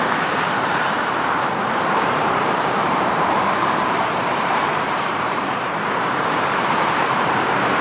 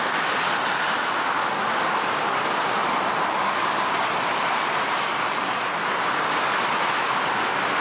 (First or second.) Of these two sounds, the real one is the second